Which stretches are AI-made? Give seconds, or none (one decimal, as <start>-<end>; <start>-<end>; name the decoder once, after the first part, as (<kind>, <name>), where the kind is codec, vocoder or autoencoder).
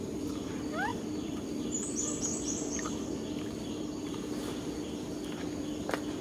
0.9-4.4 (vocoder, BigVGAN v2)